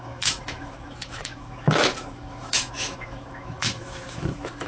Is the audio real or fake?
fake